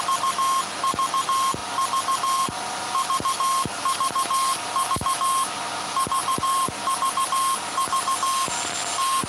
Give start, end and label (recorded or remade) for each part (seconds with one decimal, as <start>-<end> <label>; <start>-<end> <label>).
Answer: 0.0-6.2 recorded; 6.2-6.8 remade; 6.8-9.3 recorded